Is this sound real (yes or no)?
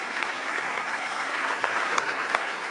no